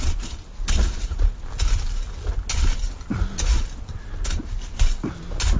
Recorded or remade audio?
recorded